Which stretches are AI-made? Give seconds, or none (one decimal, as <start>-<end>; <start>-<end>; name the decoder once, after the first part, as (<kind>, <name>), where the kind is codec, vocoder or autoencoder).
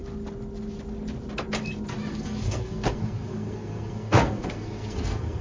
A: 2.1-5.4 (codec, SNAC)